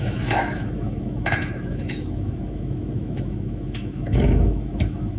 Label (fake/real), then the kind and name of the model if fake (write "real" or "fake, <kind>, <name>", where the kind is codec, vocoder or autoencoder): fake, autoencoder, DAC-VAE